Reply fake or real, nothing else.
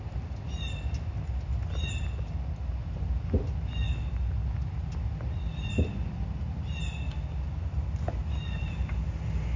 real